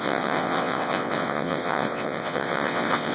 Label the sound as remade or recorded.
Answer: remade